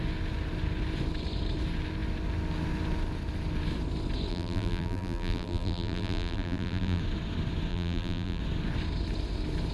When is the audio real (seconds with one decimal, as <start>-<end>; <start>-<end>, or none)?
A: 0.0-4.3; 7.0-7.7; 8.4-9.7